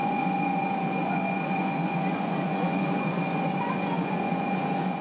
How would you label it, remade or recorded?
remade